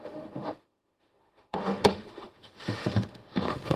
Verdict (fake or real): fake